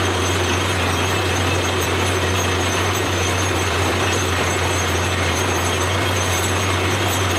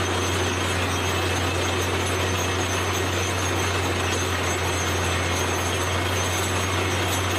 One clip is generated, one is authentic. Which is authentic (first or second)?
second